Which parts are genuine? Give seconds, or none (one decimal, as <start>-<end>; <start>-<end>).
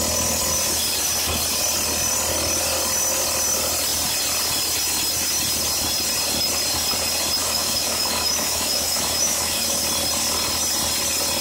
0.0-7.4; 9.8-11.4